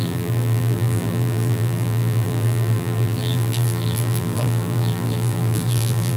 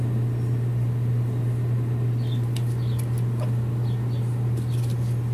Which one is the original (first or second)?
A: second